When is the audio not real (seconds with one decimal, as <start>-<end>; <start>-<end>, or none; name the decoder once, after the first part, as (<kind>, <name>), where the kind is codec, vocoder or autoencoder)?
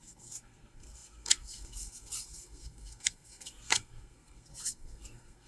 0.0-5.5 (codec, SNAC)